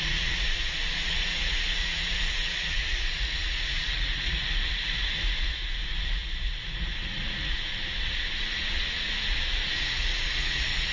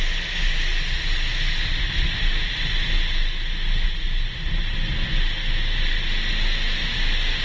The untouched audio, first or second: second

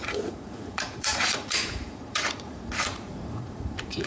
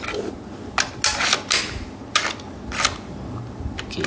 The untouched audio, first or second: second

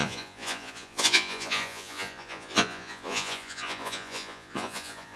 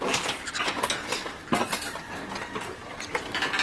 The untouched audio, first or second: second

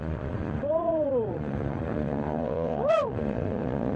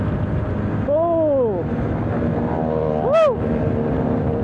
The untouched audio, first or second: second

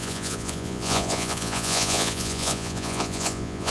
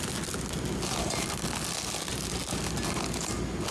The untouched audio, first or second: second